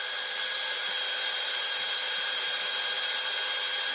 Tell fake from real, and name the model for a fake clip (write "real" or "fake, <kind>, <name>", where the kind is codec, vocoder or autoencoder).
fake, vocoder, BigVGAN v2